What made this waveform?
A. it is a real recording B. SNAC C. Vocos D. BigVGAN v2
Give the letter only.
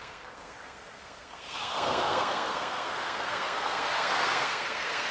B